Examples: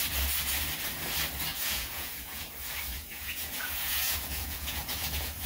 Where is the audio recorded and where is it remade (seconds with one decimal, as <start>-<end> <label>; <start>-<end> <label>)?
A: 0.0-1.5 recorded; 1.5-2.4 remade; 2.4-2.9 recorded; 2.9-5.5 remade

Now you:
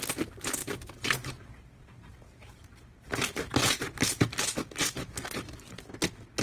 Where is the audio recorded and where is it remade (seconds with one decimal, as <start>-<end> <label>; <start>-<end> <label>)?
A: 0.0-0.6 recorded; 0.6-4.4 remade; 4.4-6.4 recorded

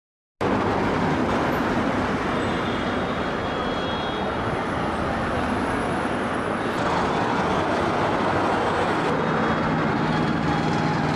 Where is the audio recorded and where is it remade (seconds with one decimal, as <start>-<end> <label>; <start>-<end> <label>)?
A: 0.0-1.2 recorded; 1.2-3.2 remade; 3.2-11.2 recorded

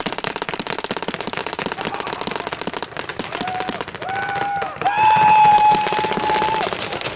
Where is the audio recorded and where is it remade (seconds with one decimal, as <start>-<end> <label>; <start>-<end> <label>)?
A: 0.0-7.2 recorded